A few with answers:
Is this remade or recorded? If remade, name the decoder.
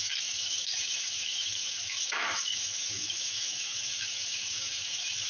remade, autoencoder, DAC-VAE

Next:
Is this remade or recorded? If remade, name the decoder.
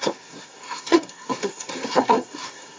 remade, codec, SNAC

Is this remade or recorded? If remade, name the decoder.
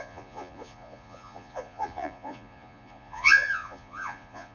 remade, vocoder, Vocos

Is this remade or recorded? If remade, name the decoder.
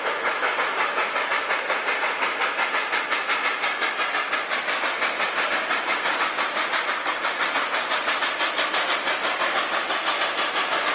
recorded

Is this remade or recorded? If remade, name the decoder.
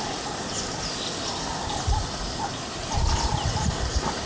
recorded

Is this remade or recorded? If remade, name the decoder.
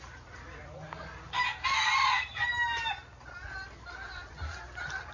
recorded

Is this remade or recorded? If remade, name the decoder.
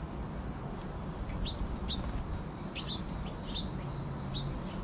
recorded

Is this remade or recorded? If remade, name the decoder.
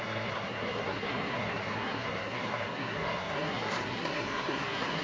remade, codec, SNAC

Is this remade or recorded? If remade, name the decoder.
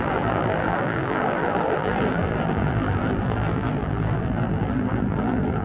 remade, vocoder, BigVGAN v2